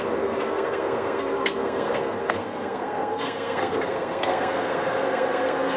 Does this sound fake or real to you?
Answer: fake